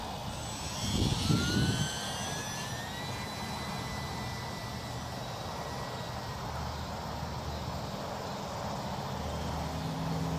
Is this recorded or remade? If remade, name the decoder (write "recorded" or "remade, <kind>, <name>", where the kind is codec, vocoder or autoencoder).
recorded